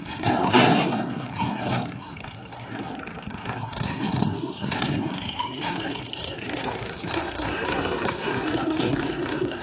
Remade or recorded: remade